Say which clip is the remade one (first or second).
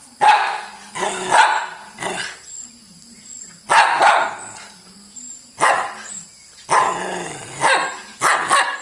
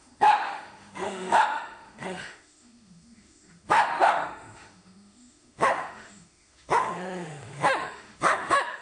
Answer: second